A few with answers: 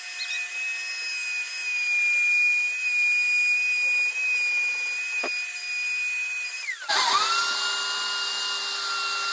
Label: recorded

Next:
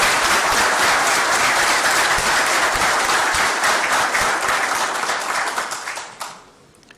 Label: recorded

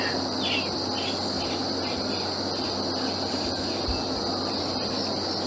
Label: recorded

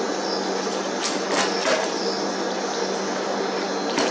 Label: recorded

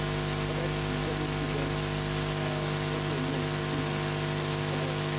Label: recorded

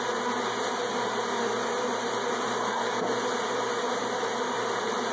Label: recorded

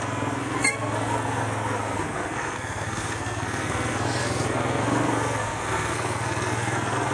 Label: remade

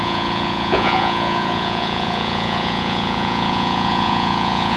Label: remade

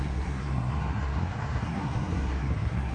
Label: remade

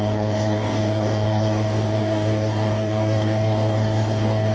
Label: remade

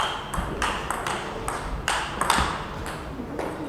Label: recorded